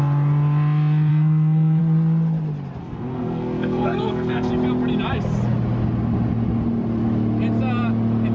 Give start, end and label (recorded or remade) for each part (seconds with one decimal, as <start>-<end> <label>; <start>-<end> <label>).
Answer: 0.0-1.1 recorded; 1.1-1.8 remade; 1.8-2.8 recorded; 2.8-4.5 remade; 4.5-8.3 recorded